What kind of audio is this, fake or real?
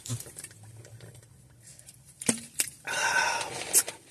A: fake